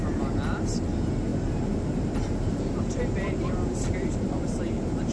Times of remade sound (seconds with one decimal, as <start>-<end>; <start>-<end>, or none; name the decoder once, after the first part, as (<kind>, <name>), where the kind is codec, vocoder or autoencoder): 0.0-5.1 (vocoder, BigVGAN v2)